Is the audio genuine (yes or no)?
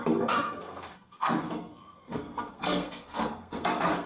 no